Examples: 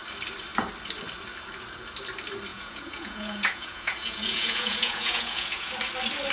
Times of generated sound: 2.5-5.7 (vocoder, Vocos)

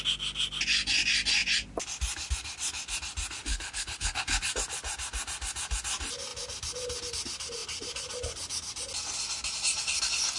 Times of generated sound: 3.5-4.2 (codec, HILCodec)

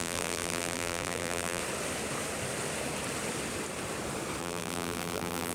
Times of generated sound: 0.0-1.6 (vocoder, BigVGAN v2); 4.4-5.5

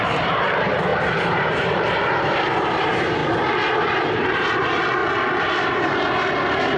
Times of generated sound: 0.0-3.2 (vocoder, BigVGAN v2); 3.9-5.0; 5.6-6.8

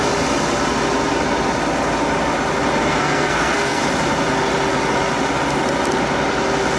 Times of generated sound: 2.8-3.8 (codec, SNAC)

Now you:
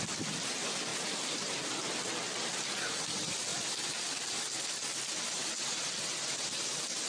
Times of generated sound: 0.9-1.7 (vocoder, BigVGAN v2)